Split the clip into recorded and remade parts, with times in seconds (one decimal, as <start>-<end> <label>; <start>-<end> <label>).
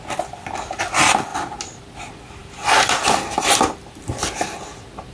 0.0-5.1 recorded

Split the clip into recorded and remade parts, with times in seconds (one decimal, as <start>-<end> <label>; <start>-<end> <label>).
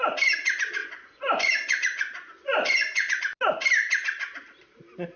0.0-0.8 recorded; 0.8-3.2 remade; 3.2-5.2 recorded